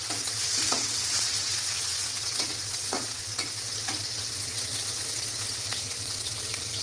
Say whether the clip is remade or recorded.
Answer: remade